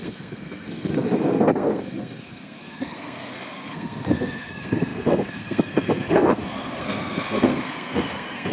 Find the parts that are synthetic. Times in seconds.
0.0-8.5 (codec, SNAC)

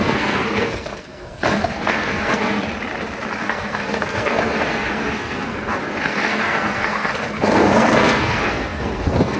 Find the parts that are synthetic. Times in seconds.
0.0-2.6 (codec, SNAC); 3.4-9.4

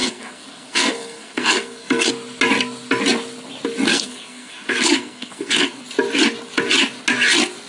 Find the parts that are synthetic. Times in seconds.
0.0-2.1 (codec, SNAC); 3.9-5.8

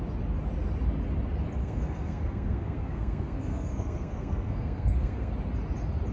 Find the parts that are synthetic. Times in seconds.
1.6-5.3 (codec, SNAC)